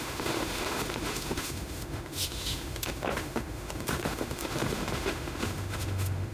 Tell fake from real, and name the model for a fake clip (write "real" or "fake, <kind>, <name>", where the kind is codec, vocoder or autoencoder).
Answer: fake, autoencoder, DAC-VAE